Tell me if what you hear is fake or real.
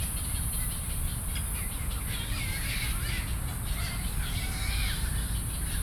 real